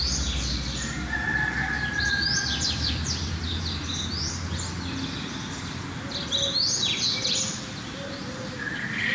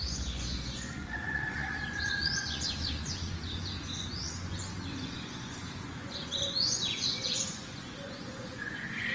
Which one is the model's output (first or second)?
second